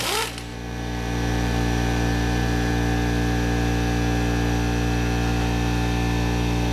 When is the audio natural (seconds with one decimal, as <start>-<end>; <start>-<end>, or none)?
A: 0.0-0.5; 2.7-6.7